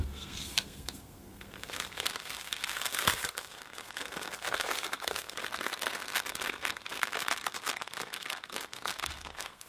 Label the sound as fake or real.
fake